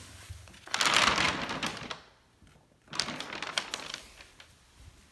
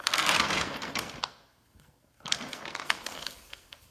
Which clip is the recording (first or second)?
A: first